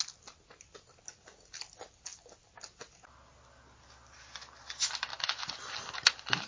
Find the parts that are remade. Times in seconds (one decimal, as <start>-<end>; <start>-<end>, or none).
none